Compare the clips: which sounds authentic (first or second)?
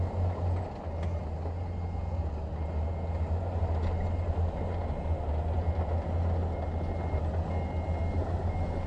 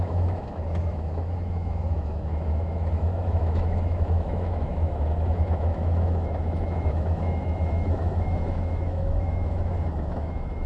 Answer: first